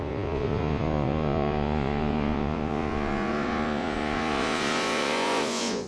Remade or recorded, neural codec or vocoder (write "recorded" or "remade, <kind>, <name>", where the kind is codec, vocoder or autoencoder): remade, vocoder, Vocos